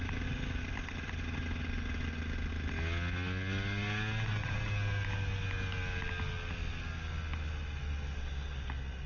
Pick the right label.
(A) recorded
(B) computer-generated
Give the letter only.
A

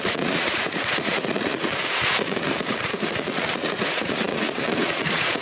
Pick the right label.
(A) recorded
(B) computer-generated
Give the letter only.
B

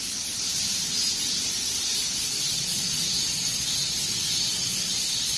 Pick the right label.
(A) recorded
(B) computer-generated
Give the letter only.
A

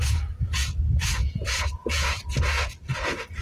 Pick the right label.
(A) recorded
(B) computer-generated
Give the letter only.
B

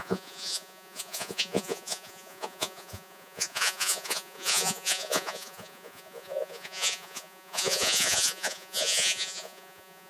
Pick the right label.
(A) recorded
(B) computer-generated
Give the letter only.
B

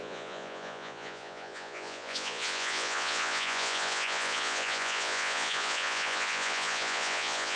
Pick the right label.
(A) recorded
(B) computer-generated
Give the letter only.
B